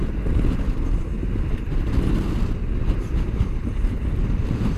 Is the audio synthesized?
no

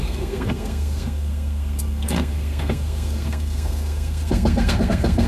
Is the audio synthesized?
yes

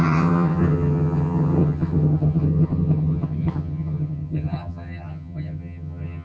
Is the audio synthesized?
yes